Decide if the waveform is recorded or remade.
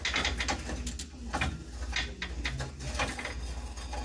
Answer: recorded